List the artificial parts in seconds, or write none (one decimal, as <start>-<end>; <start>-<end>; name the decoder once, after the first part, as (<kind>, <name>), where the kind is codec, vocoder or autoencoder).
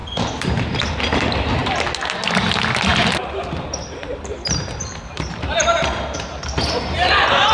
0.0-1.0 (vocoder, BigVGAN v2); 2.9-7.5